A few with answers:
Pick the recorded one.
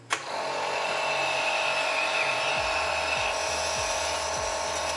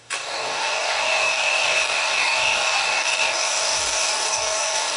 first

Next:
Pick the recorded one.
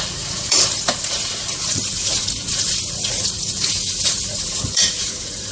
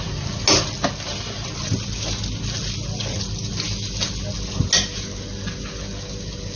second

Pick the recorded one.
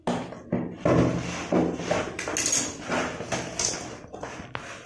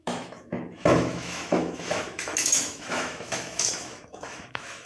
first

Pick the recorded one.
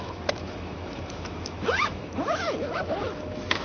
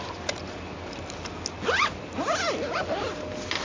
second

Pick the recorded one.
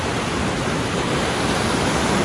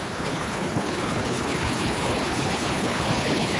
first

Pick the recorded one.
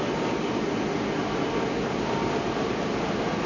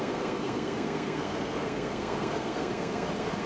first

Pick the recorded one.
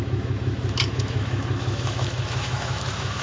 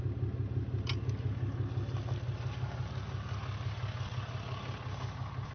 second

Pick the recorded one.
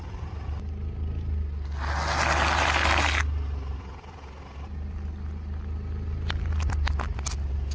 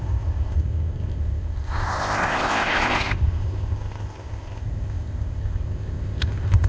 first